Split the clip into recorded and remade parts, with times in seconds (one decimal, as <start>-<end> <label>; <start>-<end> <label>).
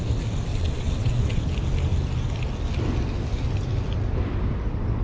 0.0-0.5 recorded; 0.5-1.4 remade; 1.4-5.0 recorded